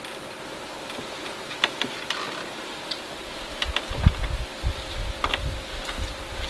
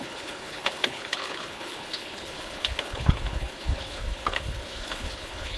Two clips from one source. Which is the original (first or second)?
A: first